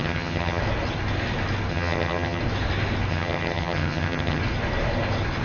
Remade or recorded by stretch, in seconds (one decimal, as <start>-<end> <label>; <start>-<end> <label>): 0.0-0.6 remade; 0.6-1.7 recorded; 1.7-2.4 remade; 2.4-3.1 recorded; 3.1-4.4 remade; 4.4-5.4 recorded